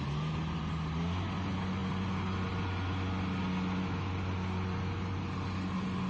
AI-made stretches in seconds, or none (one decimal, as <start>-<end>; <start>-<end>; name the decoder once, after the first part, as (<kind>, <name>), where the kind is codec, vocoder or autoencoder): none

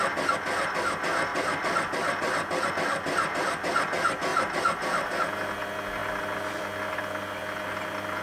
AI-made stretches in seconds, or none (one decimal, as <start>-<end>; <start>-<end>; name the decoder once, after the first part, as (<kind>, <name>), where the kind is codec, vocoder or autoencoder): 1.3-2.7 (vocoder, BigVGAN v2); 4.3-5.2; 6.0-6.6

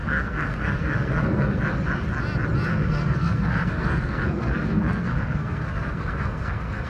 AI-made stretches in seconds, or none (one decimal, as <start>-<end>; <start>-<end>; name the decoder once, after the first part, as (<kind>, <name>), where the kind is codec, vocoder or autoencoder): 0.0-1.6 (codec, SNAC); 2.7-6.9

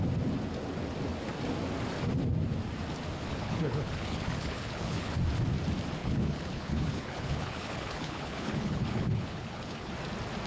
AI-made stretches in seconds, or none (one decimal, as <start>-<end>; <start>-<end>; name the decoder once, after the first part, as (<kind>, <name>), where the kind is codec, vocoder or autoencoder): 3.3-5.2 (codec, HILCodec); 6.0-9.9

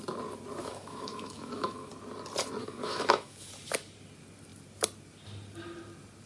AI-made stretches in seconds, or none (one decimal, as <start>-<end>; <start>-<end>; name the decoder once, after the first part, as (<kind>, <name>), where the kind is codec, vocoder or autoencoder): 0.6-1.9 (autoencoder, DAC-VAE); 2.6-3.5

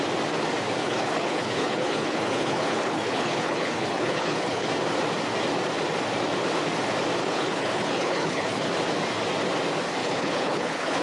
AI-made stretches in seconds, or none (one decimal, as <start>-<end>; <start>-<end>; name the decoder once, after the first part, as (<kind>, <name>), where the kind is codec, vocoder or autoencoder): 0.8-4.7 (codec, HILCodec); 7.2-8.7; 10.0-11.0

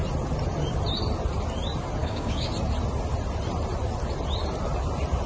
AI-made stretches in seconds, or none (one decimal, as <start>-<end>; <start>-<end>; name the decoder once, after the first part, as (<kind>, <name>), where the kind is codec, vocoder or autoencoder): 2.0-2.5 (codec, DAC)